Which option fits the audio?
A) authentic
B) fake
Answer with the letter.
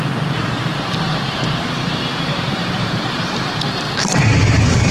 B